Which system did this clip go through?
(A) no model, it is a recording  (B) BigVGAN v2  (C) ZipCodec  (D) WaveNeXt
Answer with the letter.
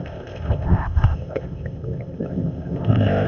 C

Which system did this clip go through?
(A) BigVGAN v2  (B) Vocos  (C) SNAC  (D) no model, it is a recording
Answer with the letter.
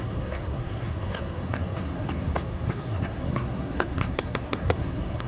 C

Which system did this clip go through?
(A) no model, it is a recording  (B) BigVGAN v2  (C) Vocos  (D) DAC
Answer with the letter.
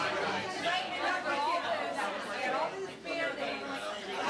A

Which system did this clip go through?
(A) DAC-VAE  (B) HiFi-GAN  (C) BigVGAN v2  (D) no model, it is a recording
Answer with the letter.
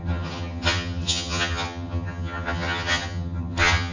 B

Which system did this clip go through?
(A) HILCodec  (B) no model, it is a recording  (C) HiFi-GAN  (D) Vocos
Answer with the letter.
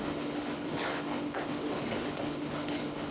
A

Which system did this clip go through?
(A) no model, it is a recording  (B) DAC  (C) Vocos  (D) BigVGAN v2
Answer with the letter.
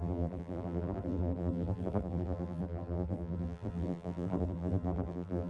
D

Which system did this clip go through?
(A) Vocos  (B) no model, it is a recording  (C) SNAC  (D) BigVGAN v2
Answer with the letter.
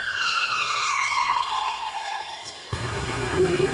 C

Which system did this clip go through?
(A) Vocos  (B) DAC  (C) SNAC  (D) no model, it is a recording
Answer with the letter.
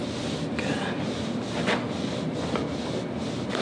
D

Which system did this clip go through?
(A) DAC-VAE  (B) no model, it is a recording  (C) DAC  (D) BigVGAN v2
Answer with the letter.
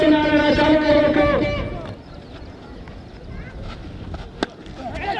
B